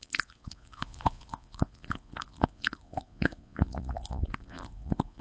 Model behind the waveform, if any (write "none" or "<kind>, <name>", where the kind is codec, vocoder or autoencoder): vocoder, Vocos